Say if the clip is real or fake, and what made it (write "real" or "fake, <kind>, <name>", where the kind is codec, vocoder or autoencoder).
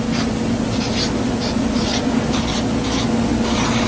real